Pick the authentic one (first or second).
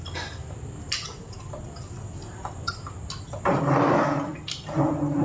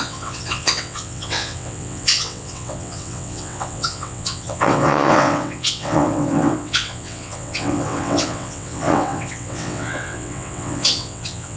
first